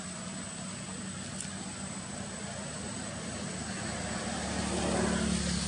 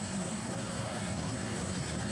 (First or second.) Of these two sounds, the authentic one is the first